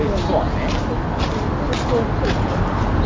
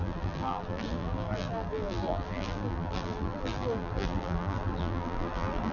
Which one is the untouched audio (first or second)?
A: first